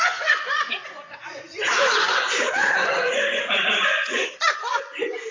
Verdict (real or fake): fake